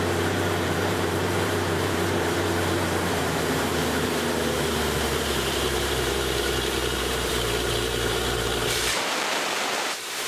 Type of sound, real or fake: fake